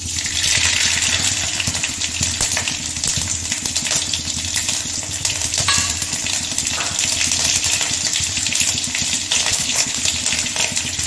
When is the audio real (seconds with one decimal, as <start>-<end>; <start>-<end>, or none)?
0.0-9.5; 10.0-11.1